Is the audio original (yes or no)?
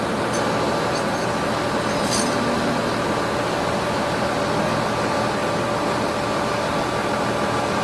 yes